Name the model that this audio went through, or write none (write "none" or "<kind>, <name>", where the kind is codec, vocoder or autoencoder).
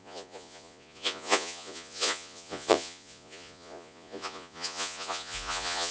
vocoder, Vocos